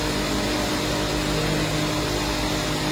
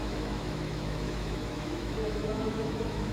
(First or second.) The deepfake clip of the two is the second